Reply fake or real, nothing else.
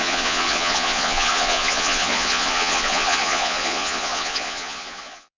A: fake